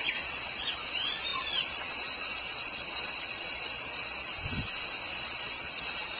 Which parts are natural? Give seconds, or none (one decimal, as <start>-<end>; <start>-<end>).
4.3-5.1